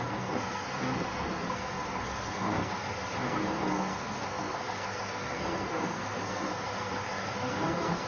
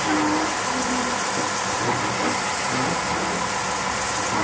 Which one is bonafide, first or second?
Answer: second